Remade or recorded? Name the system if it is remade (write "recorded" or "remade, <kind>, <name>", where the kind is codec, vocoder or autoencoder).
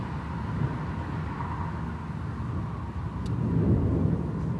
recorded